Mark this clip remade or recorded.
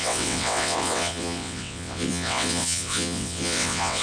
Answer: remade